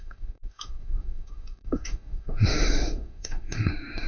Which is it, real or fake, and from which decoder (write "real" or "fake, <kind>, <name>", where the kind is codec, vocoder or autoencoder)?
fake, autoencoder, DAC-VAE